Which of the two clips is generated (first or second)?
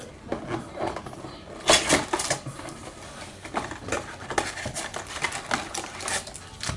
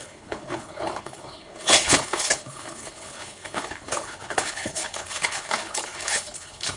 second